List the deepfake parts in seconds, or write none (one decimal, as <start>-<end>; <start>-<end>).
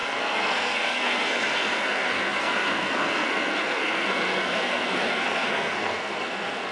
0.0-6.7